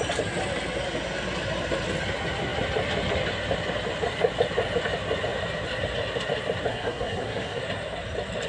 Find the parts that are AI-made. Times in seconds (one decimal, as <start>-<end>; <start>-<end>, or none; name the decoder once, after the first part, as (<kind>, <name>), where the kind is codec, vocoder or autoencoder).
6.7-7.6 (codec, SNAC)